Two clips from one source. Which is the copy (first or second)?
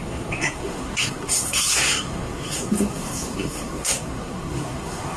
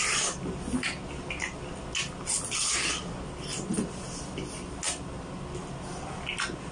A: first